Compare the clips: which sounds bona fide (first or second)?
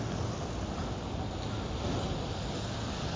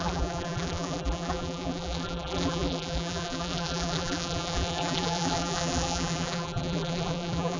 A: first